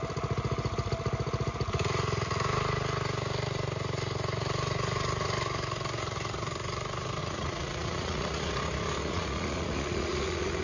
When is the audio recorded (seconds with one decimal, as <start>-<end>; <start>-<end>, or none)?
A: 0.0-7.2; 8.5-9.0